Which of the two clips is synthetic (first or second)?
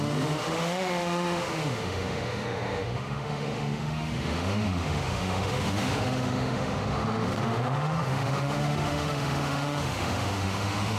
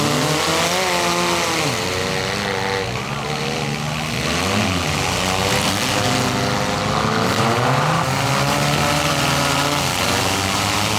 first